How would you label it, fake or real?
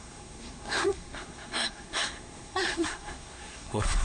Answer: fake